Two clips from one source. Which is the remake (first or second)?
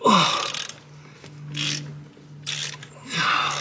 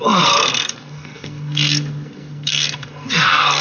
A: second